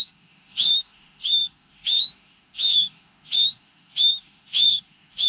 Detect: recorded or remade remade